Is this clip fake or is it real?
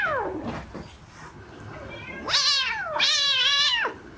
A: real